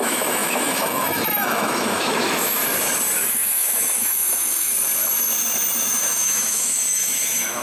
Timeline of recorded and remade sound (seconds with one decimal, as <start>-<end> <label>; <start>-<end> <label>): 0.0-2.6 remade; 2.6-3.3 recorded; 3.3-4.7 remade; 4.7-6.0 recorded; 6.0-7.6 remade